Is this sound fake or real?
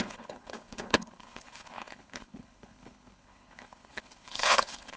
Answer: fake